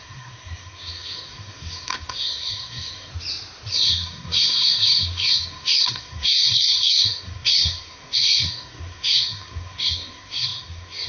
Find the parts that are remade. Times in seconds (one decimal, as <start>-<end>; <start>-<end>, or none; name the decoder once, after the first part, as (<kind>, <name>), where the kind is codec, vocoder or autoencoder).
0.0-3.1 (codec, SNAC); 3.7-11.1